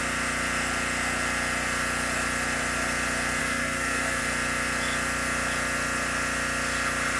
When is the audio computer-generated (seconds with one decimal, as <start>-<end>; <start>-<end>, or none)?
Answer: 3.4-4.2